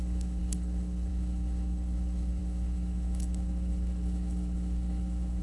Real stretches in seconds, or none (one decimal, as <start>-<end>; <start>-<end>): none